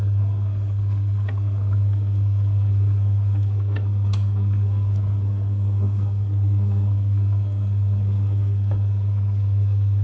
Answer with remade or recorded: remade